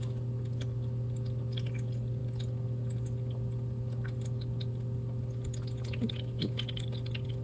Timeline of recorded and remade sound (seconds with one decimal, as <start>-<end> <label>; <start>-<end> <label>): 0.0-7.4 recorded